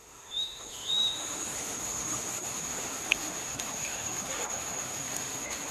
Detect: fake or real fake